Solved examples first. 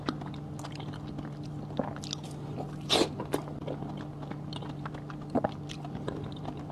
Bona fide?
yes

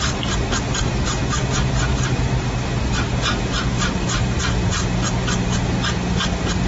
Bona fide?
yes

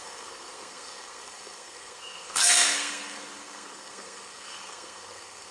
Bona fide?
no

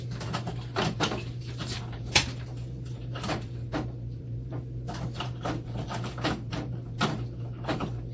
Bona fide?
no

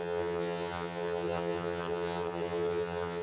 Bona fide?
no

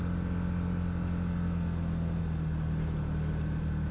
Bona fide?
yes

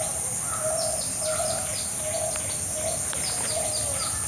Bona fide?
yes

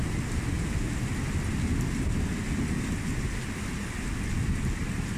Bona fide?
yes